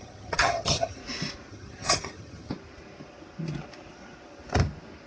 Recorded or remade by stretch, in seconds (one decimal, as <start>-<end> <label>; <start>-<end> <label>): 0.0-1.0 remade; 1.0-1.5 recorded; 1.5-2.5 remade; 2.5-5.1 recorded